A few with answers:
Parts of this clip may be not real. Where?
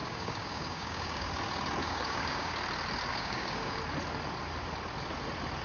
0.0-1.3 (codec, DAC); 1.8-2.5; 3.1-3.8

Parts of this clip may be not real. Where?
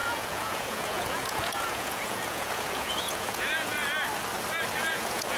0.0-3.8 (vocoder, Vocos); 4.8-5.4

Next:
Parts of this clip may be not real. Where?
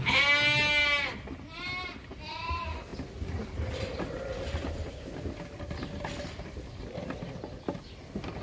none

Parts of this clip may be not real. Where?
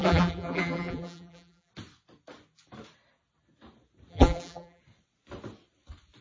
0.0-1.7 (vocoder, BigVGAN v2); 4.1-4.8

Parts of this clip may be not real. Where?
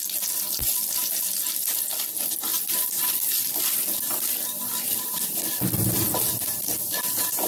2.5-6.9 (vocoder, BigVGAN v2)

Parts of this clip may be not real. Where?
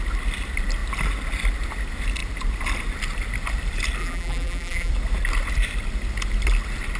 4.0-4.9 (vocoder, BigVGAN v2)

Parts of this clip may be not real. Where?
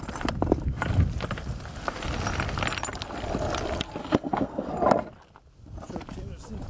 4.0-4.7 (codec, SNAC)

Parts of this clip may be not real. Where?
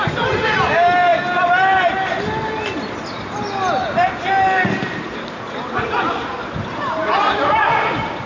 none